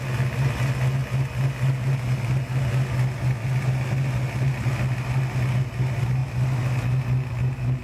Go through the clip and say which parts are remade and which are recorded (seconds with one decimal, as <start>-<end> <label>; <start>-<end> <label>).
0.0-7.8 recorded